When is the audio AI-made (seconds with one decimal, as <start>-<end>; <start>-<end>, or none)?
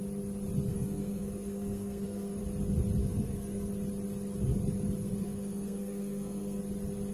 0.7-2.4; 3.0-3.7; 5.0-6.6